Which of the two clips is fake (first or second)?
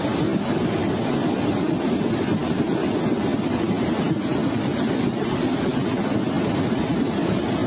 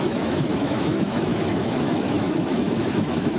second